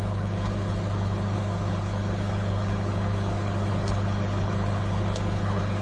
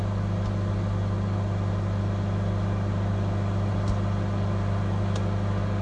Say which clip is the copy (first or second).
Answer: first